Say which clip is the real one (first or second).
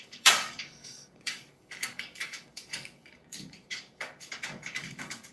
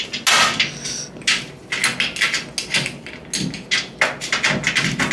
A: second